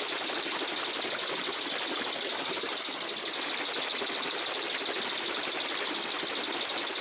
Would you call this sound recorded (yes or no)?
yes